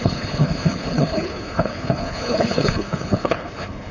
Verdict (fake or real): fake